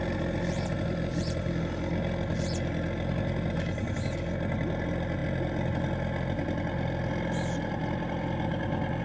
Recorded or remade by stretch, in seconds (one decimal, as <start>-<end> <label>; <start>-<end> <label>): 0.0-9.0 recorded